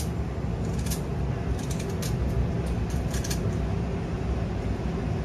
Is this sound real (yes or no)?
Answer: yes